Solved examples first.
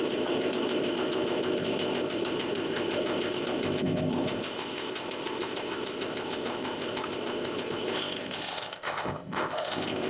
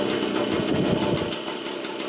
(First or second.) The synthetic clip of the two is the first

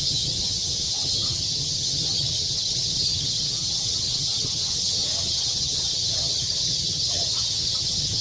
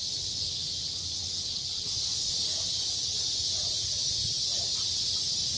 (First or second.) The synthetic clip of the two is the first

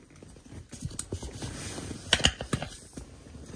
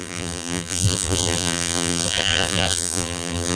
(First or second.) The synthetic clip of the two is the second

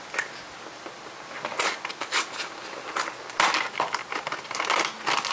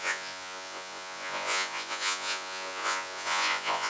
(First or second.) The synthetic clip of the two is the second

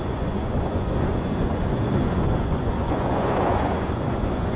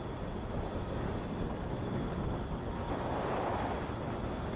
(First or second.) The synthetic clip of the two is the first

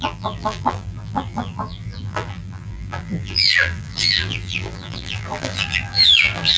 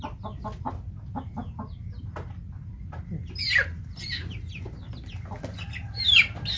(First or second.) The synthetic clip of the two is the first